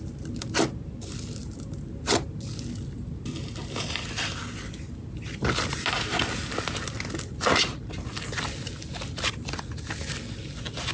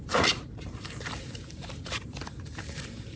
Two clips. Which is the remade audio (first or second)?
second